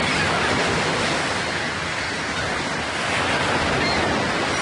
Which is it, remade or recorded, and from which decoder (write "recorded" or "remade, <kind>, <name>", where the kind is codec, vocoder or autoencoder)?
recorded